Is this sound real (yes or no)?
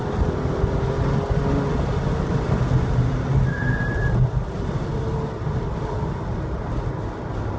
yes